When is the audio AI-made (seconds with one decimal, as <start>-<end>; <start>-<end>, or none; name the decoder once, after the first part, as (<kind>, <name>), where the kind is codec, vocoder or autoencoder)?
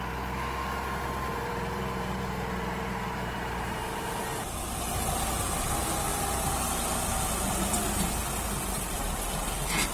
1.3-4.2 (vocoder, BigVGAN v2)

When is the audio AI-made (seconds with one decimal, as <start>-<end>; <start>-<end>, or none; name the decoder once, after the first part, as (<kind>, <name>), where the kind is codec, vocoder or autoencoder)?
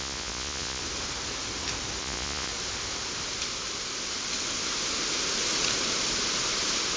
0.0-0.8 (vocoder, Vocos); 2.0-2.5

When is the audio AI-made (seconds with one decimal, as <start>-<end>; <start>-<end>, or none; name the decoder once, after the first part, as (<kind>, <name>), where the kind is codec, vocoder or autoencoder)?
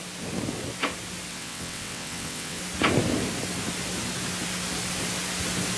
1.3-2.6 (vocoder, WaveNeXt)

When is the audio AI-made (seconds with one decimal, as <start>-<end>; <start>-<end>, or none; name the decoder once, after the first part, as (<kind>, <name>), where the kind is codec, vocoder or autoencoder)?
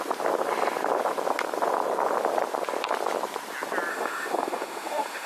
3.9-5.3 (autoencoder, DAC-VAE)